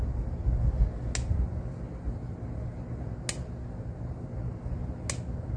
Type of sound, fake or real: real